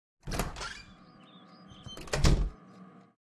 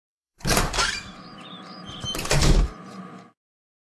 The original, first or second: first